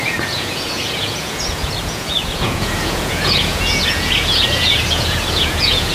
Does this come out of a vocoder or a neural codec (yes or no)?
yes